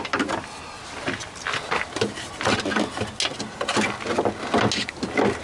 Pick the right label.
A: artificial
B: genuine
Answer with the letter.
B